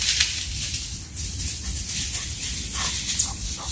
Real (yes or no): yes